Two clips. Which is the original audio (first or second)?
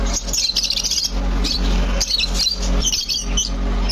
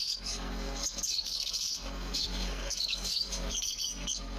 first